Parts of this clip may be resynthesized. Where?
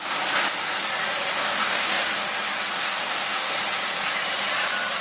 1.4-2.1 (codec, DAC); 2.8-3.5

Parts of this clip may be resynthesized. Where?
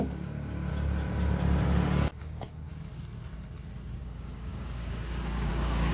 0.0-0.7 (codec, DAC); 2.2-2.7; 4.0-5.9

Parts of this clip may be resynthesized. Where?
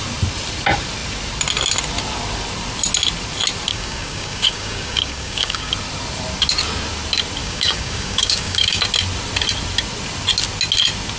3.7-5.7 (codec, DAC); 7.4-8.8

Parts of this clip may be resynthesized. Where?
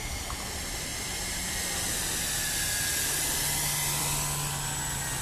none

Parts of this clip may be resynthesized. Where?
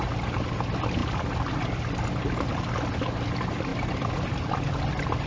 none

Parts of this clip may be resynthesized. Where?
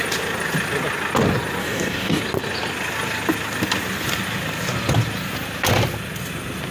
1.6-2.2 (codec, DAC)